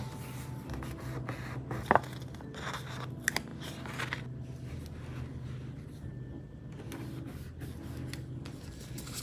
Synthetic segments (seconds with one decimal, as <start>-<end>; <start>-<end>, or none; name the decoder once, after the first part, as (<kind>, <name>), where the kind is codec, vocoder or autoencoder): none

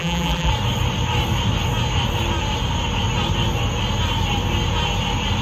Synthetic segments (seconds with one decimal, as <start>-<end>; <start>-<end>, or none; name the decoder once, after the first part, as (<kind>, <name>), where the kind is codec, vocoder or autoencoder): 0.0-0.5 (vocoder, BigVGAN v2)

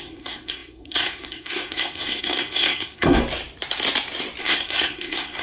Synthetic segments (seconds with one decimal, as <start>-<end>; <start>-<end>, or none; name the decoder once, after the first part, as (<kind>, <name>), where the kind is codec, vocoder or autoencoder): 0.0-3.2 (codec, SNAC); 4.4-5.4

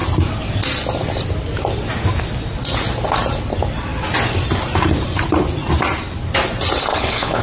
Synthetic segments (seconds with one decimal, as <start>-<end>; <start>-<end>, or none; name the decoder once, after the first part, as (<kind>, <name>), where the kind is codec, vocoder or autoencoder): 6.9-7.4 (codec, HILCodec)

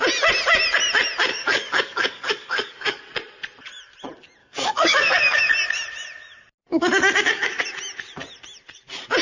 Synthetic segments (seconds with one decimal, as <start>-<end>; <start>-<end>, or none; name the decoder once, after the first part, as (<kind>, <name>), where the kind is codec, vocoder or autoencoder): 1.3-3.0 (codec, DAC); 4.4-5.5; 6.7-7.6